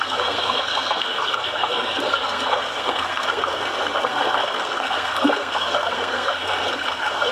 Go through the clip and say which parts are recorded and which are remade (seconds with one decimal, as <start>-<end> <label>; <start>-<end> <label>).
0.0-7.3 remade